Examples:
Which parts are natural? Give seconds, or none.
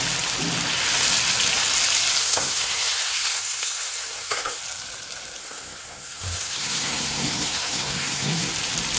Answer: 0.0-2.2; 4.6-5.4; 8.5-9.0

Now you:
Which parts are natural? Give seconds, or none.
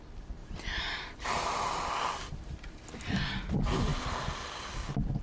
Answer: 0.0-5.2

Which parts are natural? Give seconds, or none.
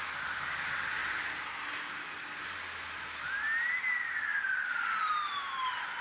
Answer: 0.0-6.0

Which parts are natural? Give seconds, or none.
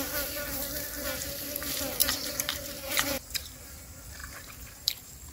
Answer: 0.0-2.0; 3.7-4.2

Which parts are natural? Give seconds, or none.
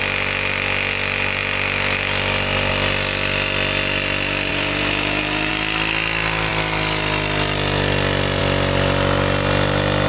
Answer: 0.0-4.5; 5.5-10.1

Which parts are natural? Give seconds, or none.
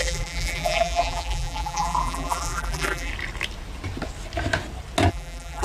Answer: 3.1-5.1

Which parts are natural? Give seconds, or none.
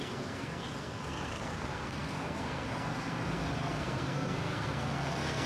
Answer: none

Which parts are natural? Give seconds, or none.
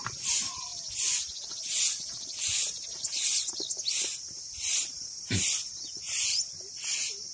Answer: 0.0-7.3